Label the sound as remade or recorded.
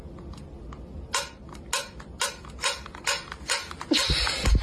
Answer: recorded